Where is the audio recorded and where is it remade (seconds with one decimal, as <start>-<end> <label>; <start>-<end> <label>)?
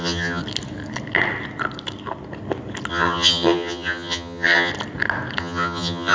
0.0-0.4 remade; 0.4-2.9 recorded; 2.9-4.7 remade; 4.7-5.4 recorded; 5.4-6.1 remade